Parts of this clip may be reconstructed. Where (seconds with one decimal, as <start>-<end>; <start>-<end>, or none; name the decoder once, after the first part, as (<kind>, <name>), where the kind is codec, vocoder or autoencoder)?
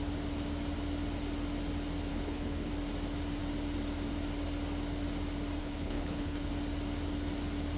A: 2.1-2.7 (codec, HILCodec); 5.6-6.5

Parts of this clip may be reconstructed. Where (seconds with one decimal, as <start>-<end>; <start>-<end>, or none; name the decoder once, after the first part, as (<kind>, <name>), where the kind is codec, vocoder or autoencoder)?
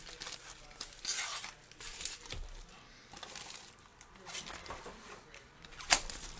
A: none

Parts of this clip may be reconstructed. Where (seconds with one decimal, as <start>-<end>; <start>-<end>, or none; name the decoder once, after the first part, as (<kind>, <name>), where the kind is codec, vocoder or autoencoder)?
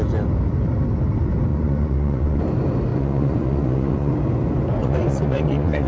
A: 1.5-2.4 (vocoder, Vocos); 2.9-4.1; 4.8-5.9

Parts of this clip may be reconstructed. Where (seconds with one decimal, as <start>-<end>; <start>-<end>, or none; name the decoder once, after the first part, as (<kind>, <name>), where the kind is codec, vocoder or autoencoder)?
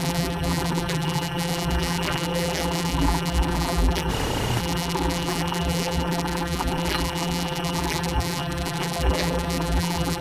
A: 0.0-4.1 (vocoder, BigVGAN v2); 4.6-10.2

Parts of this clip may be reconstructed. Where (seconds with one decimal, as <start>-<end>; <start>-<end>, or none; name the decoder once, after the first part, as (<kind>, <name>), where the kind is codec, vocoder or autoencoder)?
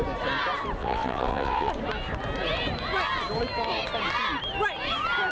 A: 0.8-1.7 (vocoder, WaveNeXt)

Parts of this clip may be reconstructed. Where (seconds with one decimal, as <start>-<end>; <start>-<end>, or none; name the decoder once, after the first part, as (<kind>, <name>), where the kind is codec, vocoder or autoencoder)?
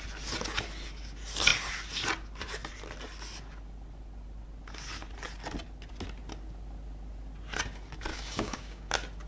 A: 8.1-8.9 (codec, DAC)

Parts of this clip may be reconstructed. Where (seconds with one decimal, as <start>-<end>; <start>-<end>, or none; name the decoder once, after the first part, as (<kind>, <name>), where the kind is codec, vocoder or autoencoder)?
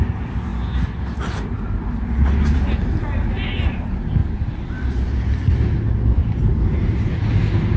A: 4.2-5.6 (vocoder, BigVGAN v2); 6.2-7.1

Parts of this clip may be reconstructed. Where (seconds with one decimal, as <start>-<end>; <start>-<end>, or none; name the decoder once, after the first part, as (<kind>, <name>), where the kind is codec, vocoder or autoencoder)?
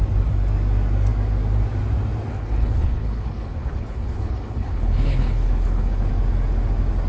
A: 2.3-6.1 (codec, HILCodec)